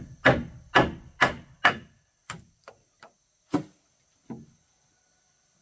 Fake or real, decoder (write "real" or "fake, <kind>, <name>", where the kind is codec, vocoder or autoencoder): real